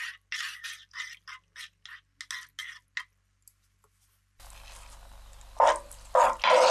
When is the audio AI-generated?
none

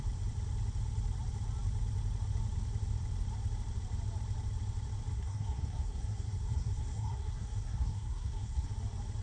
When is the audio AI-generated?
5.1-8.7 (codec, SNAC)

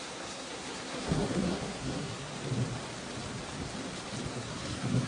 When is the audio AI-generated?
0.0-2.3 (codec, SNAC); 4.3-5.1

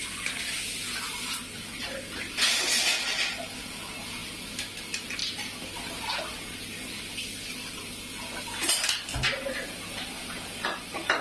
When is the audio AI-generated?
none

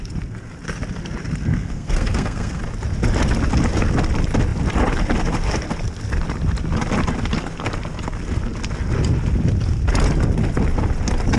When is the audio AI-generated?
1.5-2.6 (codec, SNAC)

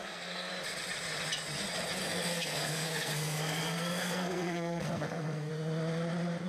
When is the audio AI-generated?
0.0-0.5 (codec, SNAC); 2.0-5.5